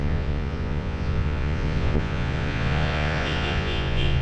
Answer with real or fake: fake